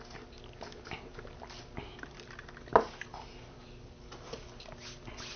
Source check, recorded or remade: recorded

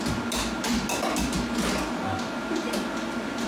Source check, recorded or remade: recorded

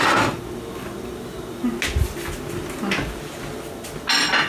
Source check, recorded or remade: recorded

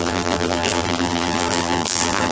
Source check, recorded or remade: remade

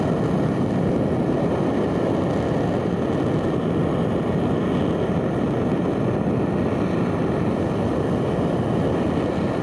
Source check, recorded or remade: recorded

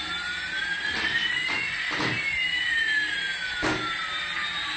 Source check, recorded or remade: recorded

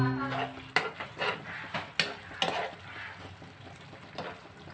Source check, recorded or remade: recorded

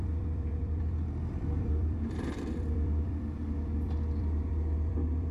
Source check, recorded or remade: remade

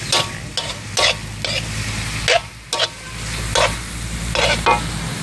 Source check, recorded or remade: recorded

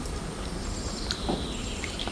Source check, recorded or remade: remade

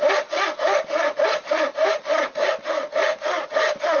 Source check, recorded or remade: recorded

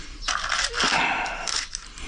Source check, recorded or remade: recorded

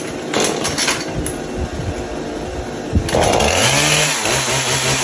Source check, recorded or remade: recorded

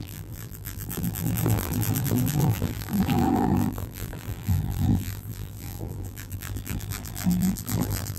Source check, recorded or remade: remade